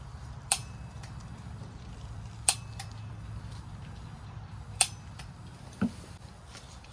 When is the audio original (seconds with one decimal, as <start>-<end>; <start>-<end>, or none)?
none